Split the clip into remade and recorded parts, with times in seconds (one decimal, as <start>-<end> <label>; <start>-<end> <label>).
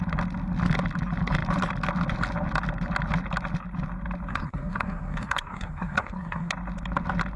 0.0-4.3 recorded; 4.3-6.5 remade; 6.5-7.4 recorded